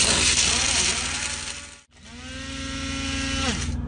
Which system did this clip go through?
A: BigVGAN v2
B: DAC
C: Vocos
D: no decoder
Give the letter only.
D